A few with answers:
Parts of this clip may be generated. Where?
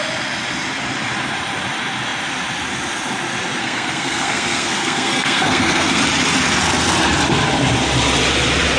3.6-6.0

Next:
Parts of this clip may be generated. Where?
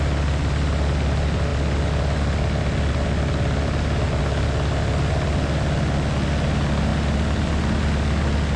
none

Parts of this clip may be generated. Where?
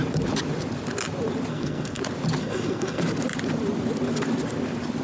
1.5-2.0; 2.4-3.0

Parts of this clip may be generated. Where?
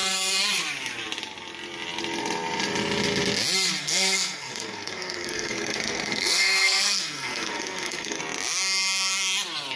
3.8-8.2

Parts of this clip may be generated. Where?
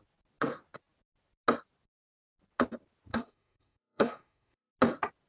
3.1-4.7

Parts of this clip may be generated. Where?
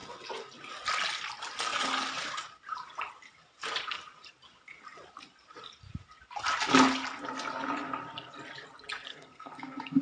9.1-10.0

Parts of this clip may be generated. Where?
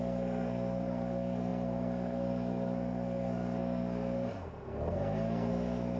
0.0-6.0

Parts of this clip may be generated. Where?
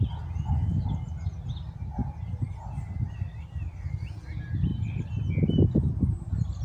none